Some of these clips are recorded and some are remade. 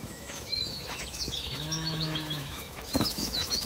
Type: remade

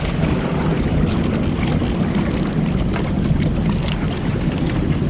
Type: recorded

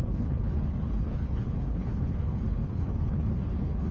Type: remade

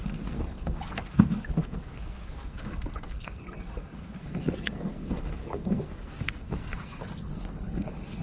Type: remade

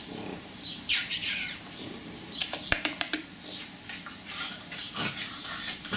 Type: remade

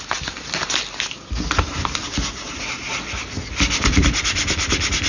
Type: recorded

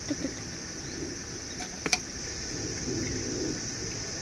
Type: recorded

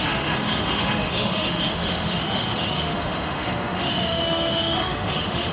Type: remade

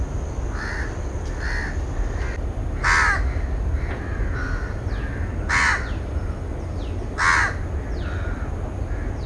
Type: recorded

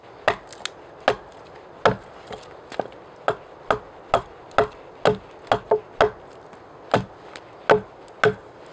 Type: recorded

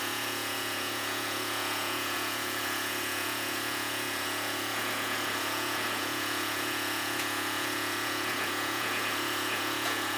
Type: remade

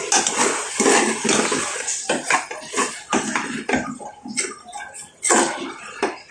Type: recorded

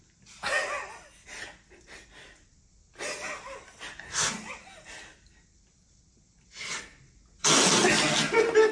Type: recorded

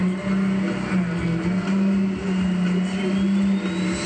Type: recorded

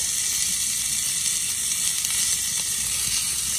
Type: recorded